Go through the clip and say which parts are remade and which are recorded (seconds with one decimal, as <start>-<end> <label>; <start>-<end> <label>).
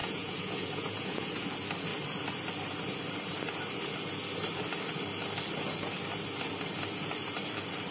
0.0-1.5 remade; 1.5-7.9 recorded